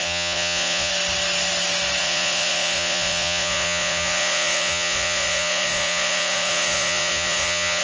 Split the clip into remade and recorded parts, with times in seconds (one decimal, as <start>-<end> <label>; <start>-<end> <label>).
0.0-0.9 remade; 0.9-2.0 recorded; 2.0-7.8 remade